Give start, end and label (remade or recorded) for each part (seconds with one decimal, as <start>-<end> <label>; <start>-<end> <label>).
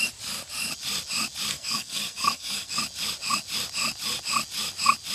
0.0-1.5 recorded; 1.5-2.8 remade; 2.8-5.1 recorded